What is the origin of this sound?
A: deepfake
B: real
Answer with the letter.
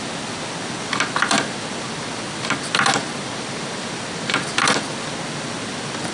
B